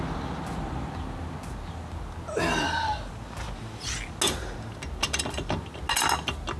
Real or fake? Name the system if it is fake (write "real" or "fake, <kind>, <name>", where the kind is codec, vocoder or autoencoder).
real